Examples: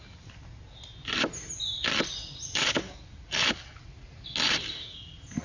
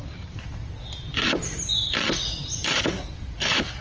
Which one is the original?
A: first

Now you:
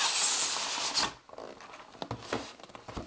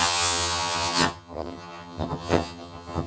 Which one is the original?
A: first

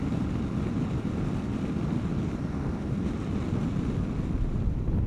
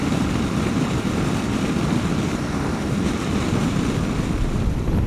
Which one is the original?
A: first